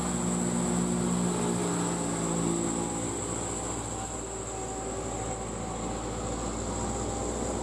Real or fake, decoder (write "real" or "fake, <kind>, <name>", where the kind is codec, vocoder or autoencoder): real